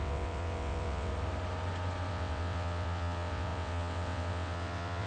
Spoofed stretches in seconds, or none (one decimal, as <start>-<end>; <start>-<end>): 0.0-1.1; 2.1-5.1

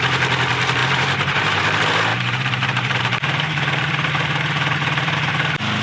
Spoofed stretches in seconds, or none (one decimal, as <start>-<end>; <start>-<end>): 0.8-1.6; 2.1-5.3

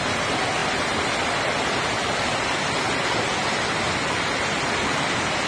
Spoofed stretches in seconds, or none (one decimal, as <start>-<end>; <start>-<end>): none

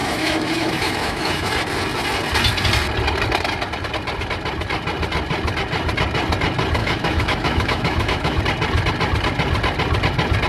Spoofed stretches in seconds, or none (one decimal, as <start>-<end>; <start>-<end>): 0.0-1.5; 6.8-8.4

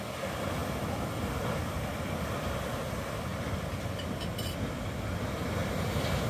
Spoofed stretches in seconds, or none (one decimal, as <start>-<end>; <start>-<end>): none